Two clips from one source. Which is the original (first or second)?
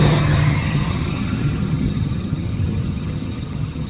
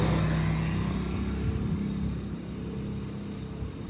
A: second